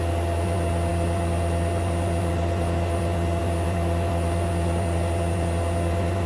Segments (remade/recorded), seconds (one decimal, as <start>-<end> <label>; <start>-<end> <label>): 0.0-6.3 recorded